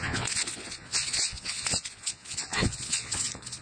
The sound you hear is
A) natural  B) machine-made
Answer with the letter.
B